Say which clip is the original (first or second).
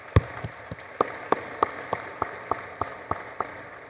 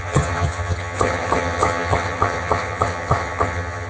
first